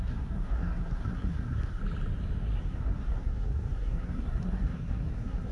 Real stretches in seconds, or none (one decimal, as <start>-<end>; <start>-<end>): 1.8-2.6